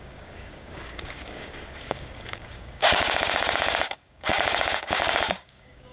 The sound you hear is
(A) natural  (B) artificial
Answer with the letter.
B